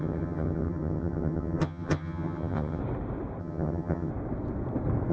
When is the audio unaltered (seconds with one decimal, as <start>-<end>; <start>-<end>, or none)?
2.8-3.4; 4.1-5.1